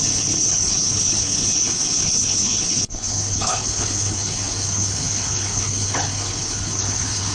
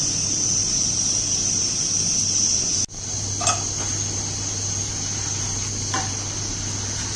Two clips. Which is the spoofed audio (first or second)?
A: first